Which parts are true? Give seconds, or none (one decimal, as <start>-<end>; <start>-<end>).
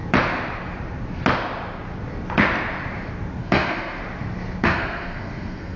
0.0-3.4; 4.0-4.6